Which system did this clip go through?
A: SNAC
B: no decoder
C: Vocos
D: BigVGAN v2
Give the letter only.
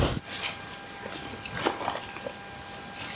B